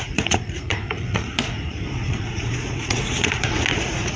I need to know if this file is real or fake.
fake